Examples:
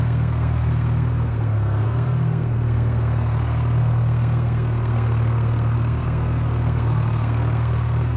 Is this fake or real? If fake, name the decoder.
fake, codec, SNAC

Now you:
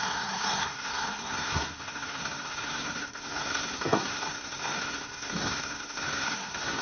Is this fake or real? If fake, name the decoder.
fake, codec, SNAC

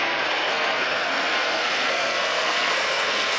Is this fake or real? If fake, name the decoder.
fake, codec, SNAC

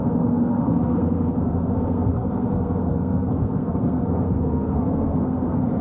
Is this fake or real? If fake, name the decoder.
fake, codec, SNAC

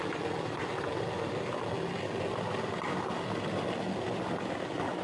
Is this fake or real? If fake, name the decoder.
real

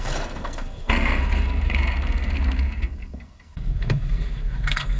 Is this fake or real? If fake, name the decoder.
fake, codec, SNAC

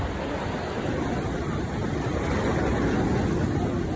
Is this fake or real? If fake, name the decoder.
real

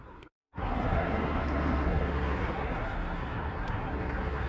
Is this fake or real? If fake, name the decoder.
fake, codec, SNAC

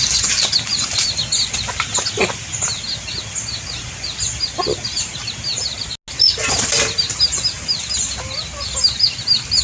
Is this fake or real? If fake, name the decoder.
real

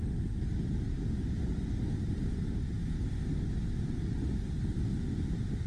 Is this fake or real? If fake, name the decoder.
real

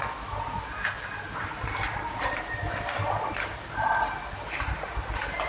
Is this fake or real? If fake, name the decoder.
real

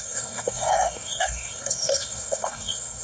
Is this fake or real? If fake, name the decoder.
fake, codec, SNAC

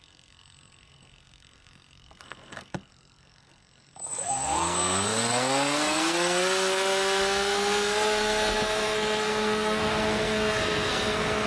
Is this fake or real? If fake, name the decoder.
fake, codec, SNAC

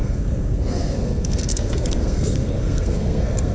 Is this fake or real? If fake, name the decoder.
fake, codec, SNAC